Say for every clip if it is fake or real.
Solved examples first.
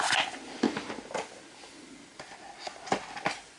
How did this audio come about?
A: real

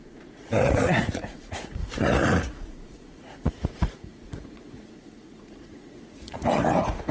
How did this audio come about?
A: fake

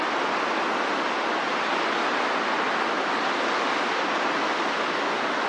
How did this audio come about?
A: real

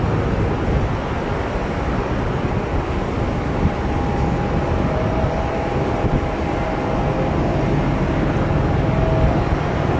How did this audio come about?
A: real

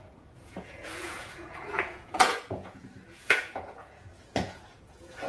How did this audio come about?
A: fake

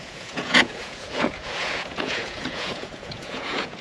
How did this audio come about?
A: fake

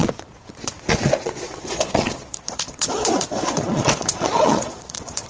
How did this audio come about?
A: fake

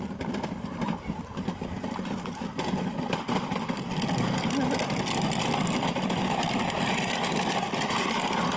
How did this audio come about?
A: real